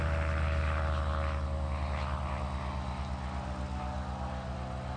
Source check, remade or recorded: recorded